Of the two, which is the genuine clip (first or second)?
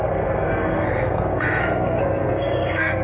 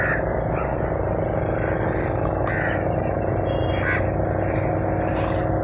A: second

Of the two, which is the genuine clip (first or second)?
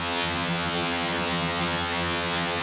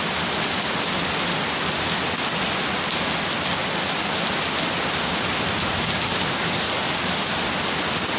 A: second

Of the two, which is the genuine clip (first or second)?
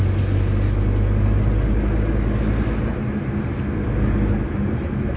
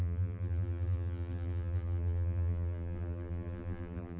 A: first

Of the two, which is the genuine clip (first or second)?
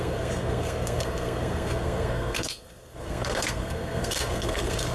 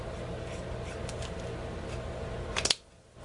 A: second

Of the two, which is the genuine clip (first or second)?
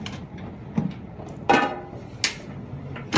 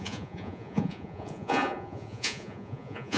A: first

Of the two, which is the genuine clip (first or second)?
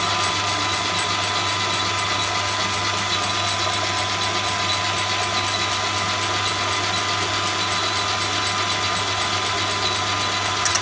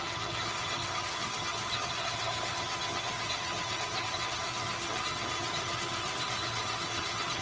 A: first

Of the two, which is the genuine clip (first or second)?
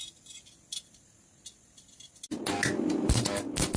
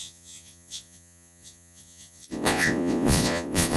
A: first